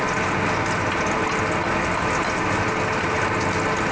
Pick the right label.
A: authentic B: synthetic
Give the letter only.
A